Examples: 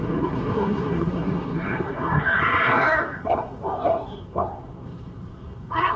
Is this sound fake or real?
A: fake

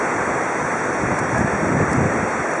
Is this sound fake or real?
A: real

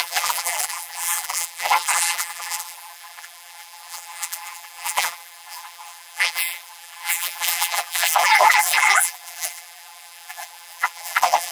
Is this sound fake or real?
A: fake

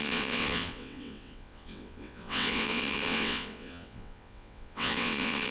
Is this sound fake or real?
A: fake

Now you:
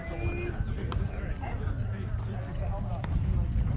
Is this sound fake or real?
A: real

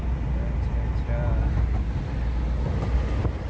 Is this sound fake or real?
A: real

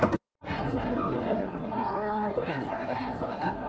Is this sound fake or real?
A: fake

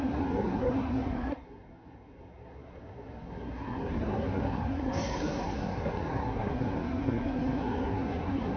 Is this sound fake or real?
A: fake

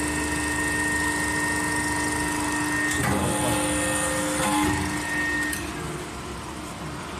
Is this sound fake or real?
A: real